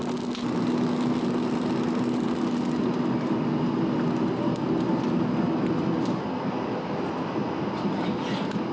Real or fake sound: real